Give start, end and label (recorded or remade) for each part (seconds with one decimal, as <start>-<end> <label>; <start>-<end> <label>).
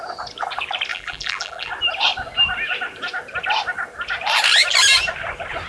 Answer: 0.0-0.9 recorded; 0.9-1.7 remade; 1.7-5.7 recorded